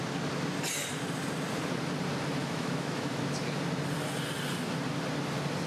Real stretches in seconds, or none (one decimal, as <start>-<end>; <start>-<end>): 0.0-2.4; 3.2-5.7